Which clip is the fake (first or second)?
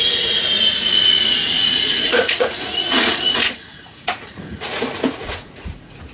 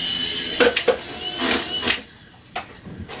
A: first